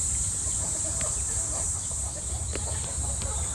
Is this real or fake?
fake